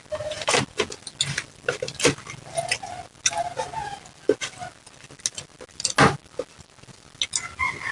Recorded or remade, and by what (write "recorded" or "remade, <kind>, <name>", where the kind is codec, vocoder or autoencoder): recorded